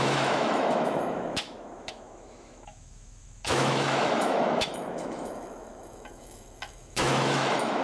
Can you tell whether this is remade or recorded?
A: remade